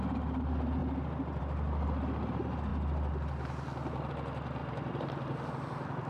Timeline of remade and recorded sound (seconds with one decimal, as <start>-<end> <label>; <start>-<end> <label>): 0.0-4.6 recorded; 4.6-5.5 remade; 5.5-6.1 recorded